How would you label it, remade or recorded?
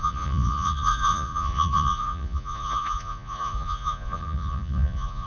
remade